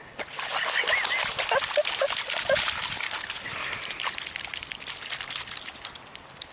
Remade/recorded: recorded